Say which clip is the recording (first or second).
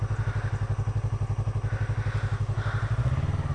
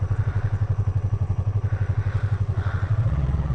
first